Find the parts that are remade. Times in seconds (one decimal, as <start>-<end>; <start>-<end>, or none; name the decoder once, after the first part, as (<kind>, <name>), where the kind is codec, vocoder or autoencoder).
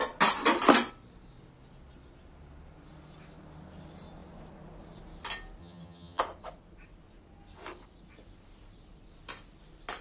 5.6-6.2 (vocoder, HiFi-GAN)